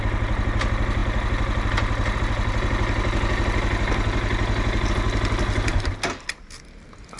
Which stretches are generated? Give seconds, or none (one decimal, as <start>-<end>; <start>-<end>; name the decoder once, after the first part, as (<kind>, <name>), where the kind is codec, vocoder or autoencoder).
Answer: none